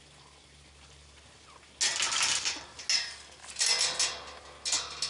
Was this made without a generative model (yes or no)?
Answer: yes